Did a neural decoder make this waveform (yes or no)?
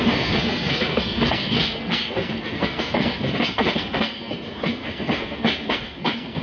yes